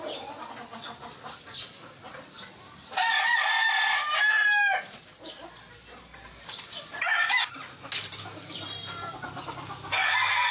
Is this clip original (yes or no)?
yes